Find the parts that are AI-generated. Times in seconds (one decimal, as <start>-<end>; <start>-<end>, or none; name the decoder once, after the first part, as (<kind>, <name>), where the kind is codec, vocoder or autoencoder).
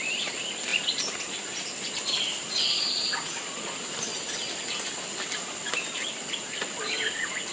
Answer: none